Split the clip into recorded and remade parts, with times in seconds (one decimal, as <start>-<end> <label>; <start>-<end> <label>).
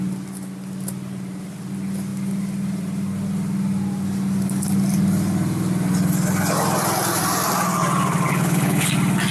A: 0.0-8.3 recorded; 8.3-8.9 remade; 8.9-9.3 recorded